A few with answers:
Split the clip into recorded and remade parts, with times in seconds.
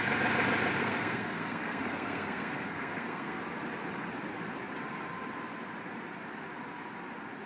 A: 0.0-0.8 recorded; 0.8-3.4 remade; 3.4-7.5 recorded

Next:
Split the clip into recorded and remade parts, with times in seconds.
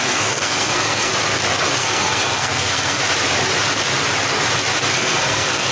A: 0.0-1.1 remade; 1.1-1.8 recorded; 1.8-3.0 remade; 3.0-4.9 recorded; 4.9-5.7 remade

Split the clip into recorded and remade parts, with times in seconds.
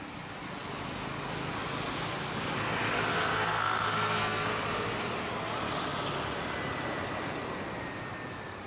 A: 0.0-3.1 recorded; 3.1-4.5 remade; 4.5-8.7 recorded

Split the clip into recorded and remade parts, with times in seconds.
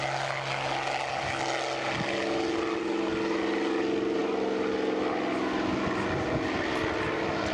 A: 0.0-7.5 recorded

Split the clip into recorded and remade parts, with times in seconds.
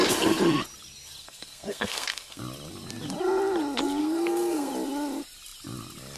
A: 0.0-1.2 recorded; 1.2-2.4 remade; 2.4-4.0 recorded; 4.0-4.7 remade; 4.7-6.2 recorded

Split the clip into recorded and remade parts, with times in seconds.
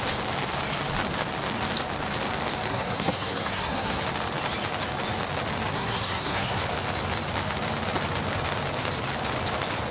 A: 0.0-2.7 recorded; 2.7-4.0 remade; 4.0-5.7 recorded; 5.7-6.6 remade; 6.6-9.9 recorded